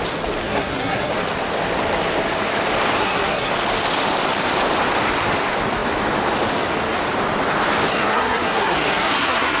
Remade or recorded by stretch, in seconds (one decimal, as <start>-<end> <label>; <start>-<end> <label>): 0.0-0.4 recorded; 0.4-1.1 remade; 1.1-3.0 recorded; 3.0-3.5 remade; 3.5-7.9 recorded; 7.9-9.6 remade